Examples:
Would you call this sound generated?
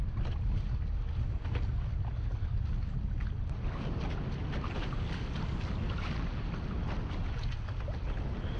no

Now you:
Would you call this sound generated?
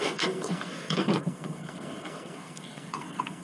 yes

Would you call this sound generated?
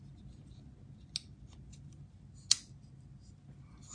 no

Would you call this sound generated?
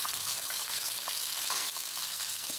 yes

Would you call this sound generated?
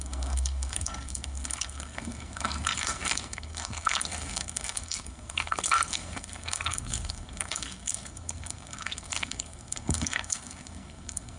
yes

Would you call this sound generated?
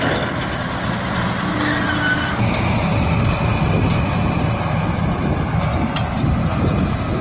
no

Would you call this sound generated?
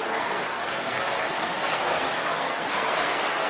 yes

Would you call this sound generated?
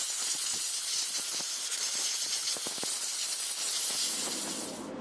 no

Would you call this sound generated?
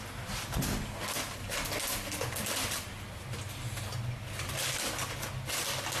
no